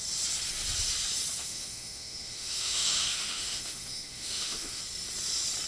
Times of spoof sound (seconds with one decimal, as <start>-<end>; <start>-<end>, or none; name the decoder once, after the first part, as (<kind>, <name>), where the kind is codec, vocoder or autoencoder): 1.4-4.8 (autoencoder, DAC-VAE)